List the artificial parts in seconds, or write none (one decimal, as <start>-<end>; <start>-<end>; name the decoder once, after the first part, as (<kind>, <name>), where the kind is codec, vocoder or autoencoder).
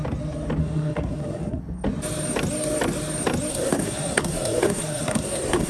0.6-1.6 (codec, SNAC); 3.5-5.7